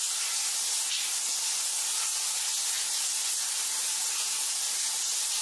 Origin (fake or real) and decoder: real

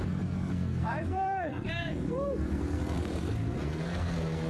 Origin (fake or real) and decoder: fake, codec, SNAC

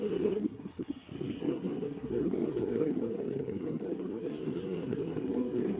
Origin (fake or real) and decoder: fake, codec, SNAC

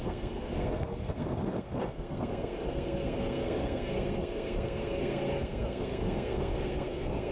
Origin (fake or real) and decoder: fake, codec, SNAC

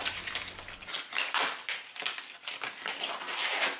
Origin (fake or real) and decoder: real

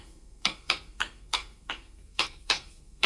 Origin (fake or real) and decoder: fake, codec, SNAC